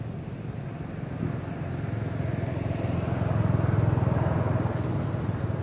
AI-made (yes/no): no